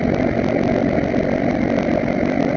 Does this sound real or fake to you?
real